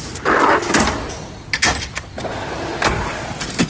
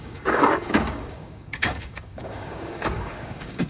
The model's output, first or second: second